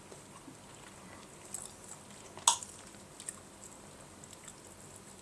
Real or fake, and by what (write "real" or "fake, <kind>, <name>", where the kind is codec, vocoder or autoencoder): real